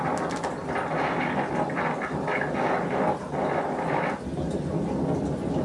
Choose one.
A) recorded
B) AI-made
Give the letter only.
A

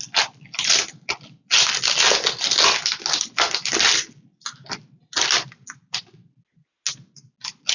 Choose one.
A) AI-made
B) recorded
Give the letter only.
B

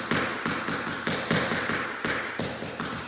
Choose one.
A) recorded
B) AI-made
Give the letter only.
A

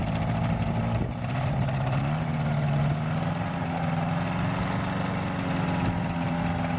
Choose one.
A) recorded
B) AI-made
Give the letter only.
A